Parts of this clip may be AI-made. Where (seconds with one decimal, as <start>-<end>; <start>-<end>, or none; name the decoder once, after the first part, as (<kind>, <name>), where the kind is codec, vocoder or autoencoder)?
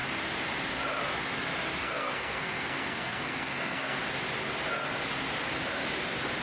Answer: 1.8-4.0 (codec, SNAC)